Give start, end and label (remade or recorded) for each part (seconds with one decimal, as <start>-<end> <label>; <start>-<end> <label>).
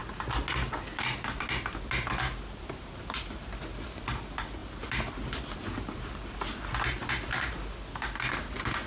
0.0-8.9 recorded